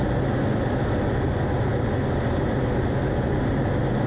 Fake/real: real